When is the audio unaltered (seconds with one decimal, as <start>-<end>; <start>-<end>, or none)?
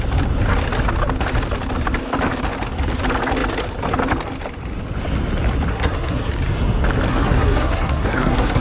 0.0-5.7; 6.3-7.1